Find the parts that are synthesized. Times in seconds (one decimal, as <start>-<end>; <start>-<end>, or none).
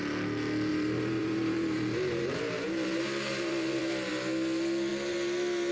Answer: 0.7-4.1